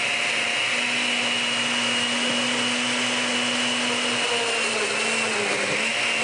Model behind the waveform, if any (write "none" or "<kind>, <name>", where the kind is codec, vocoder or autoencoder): none